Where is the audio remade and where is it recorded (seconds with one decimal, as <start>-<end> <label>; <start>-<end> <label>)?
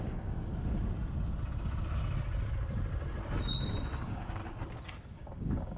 0.0-0.5 remade; 0.5-4.0 recorded; 4.0-4.4 remade; 4.4-5.1 recorded; 5.1-5.8 remade